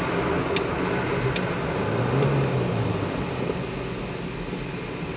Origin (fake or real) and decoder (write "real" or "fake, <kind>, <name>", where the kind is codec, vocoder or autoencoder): real